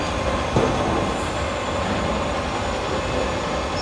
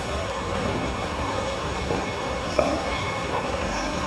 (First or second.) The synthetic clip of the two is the second